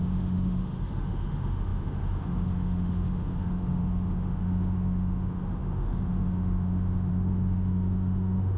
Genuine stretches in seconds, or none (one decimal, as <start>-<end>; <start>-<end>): none